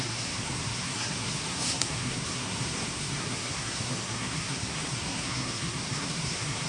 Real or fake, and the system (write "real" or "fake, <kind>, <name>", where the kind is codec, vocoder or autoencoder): fake, codec, SNAC